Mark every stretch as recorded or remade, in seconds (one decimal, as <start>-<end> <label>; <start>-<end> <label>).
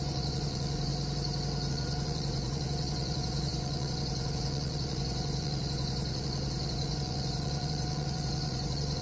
0.0-0.9 remade; 0.9-1.7 recorded; 1.7-9.0 remade